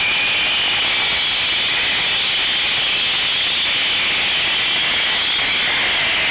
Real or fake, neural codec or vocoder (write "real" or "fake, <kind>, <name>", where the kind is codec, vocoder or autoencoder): real